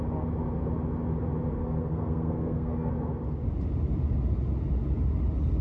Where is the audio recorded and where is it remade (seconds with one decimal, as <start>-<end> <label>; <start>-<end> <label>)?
0.0-1.6 recorded; 1.6-2.9 remade; 2.9-5.6 recorded